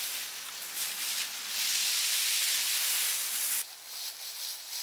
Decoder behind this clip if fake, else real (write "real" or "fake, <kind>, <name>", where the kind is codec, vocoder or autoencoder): real